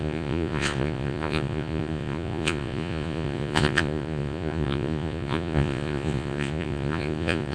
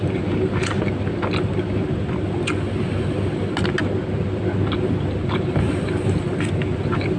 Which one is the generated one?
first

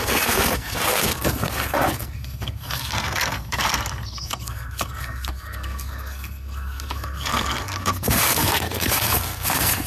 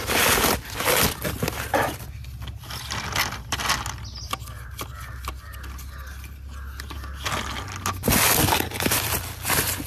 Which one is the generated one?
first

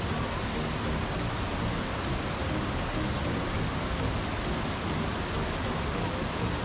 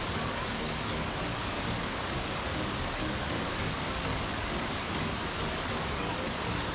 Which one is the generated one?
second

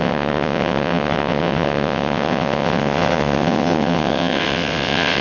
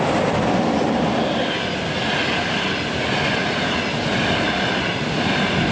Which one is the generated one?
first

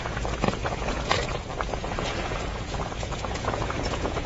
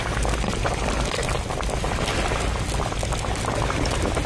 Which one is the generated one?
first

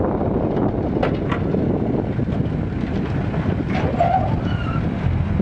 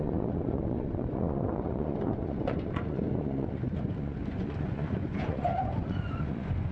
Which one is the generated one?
second